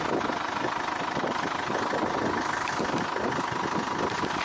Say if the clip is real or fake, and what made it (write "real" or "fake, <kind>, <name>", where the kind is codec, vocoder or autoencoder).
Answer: real